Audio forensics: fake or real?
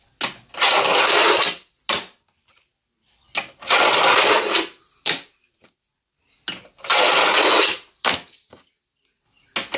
real